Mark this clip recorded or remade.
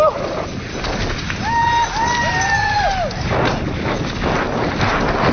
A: recorded